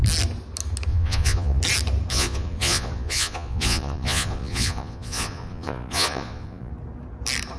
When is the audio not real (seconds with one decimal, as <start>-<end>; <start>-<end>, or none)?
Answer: 0.9-1.6; 2.1-6.7